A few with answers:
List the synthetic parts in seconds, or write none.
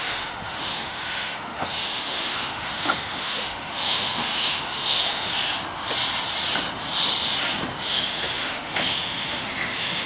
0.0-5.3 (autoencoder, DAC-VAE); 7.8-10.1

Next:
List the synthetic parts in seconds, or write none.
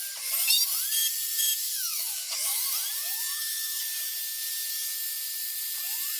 1.6-2.6 (autoencoder, DAC-VAE); 3.0-3.8